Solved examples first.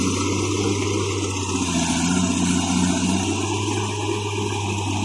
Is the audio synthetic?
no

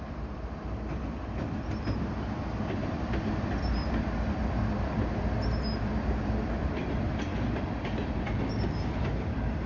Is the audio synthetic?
yes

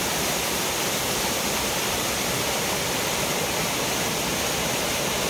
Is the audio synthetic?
no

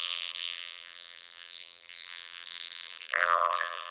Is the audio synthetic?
yes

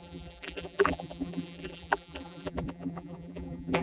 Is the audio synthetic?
yes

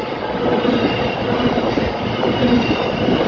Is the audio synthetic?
yes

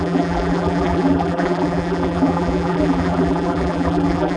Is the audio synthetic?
yes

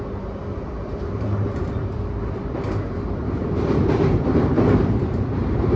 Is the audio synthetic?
yes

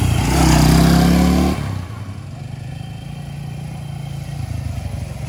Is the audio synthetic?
no